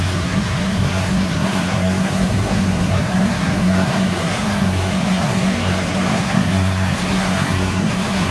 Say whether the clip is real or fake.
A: fake